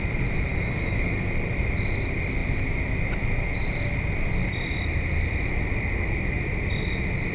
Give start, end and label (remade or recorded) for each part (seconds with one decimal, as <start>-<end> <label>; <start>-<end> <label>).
0.0-0.5 recorded; 0.5-1.3 remade; 1.3-7.3 recorded